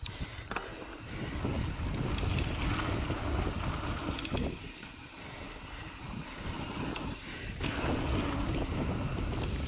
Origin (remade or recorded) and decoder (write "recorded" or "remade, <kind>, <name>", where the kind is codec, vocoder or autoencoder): recorded